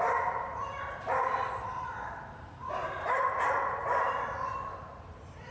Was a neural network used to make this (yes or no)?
yes